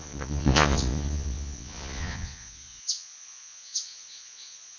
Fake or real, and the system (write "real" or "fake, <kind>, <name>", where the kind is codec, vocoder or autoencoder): fake, vocoder, Vocos